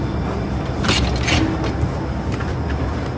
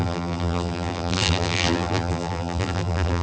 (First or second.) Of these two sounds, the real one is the first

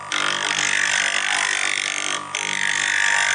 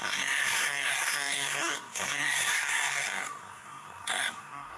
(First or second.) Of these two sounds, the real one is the first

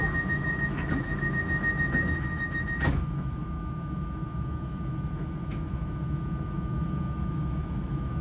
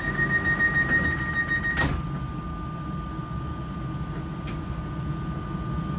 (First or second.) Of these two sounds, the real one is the second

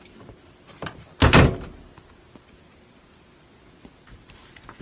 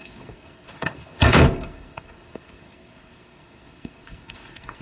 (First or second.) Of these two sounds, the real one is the first